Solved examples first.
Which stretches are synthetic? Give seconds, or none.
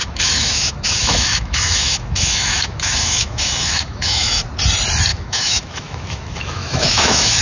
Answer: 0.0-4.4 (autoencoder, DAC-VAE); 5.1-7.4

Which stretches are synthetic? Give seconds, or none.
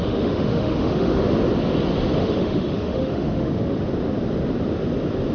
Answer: 0.0-1.2 (autoencoder, DAC-VAE); 2.2-3.8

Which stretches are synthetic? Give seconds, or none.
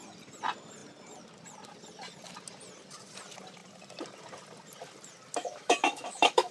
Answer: 5.4-6.5 (autoencoder, DAC-VAE)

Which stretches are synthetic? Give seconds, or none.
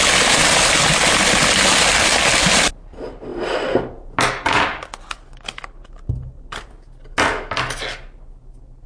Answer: none